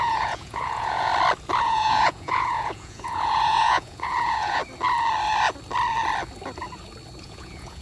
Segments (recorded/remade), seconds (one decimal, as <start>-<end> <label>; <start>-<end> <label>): 0.0-1.1 remade; 1.1-1.6 recorded; 1.6-4.6 remade; 4.6-7.2 recorded; 7.2-7.8 remade